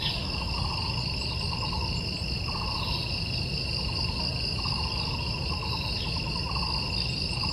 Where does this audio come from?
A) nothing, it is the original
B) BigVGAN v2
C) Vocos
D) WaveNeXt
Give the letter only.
A